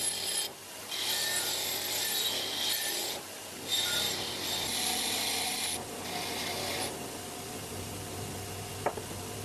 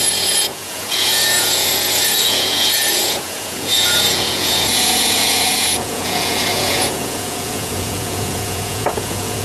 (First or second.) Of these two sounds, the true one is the first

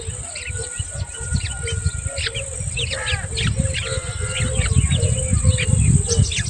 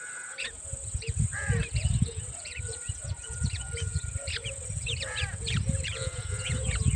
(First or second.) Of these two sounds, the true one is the first